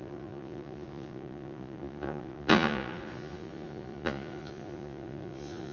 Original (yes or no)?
no